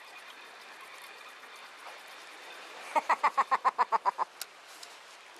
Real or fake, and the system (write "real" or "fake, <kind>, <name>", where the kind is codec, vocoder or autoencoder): real